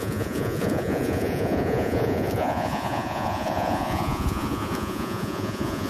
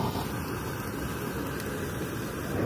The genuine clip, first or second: second